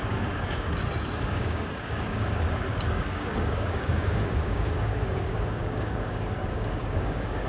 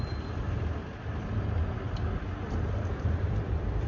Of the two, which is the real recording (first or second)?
second